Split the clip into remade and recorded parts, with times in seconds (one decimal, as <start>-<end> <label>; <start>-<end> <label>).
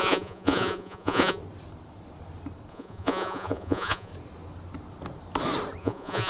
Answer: 0.0-1.4 remade; 1.4-2.7 recorded; 2.7-4.1 remade; 4.1-5.8 recorded; 5.8-6.3 remade